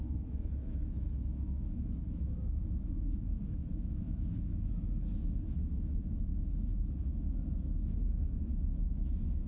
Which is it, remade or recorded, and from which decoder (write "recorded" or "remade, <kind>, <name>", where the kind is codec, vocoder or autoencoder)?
remade, autoencoder, DAC-VAE